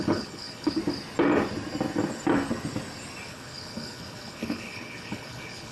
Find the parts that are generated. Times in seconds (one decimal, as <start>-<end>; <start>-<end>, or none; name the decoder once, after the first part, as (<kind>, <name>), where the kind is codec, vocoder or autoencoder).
0.0-0.8 (codec, HILCodec); 3.3-5.7